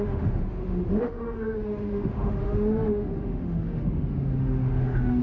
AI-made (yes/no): yes